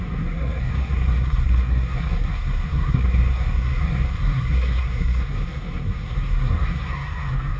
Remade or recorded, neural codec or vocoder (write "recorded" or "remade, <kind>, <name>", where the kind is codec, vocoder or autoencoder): remade, codec, SNAC